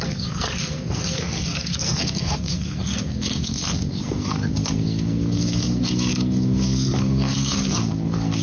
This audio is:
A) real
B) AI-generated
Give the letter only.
B